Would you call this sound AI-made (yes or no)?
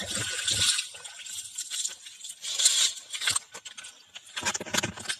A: yes